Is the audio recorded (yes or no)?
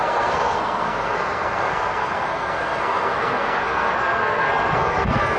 no